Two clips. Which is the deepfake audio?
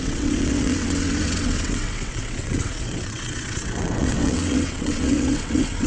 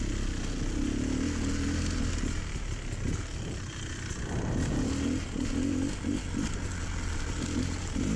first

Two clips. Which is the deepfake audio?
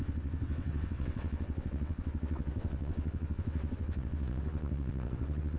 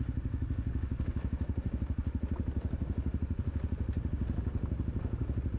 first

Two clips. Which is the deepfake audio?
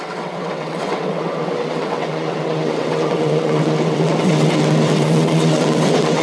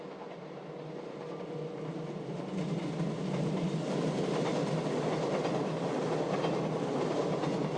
first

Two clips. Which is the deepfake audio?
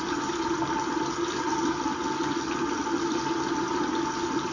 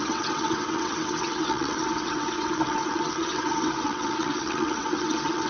second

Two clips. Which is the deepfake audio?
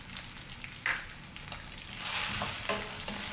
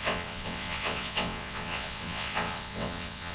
second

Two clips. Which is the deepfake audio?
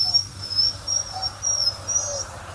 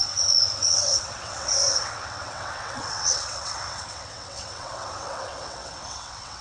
second